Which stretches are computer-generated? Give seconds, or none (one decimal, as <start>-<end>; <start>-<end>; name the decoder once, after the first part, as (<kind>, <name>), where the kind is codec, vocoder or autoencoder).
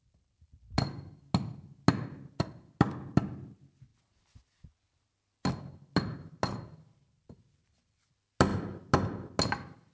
none